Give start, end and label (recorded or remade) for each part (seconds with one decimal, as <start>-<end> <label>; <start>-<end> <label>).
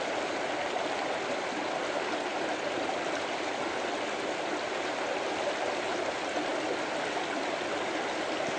0.0-8.6 recorded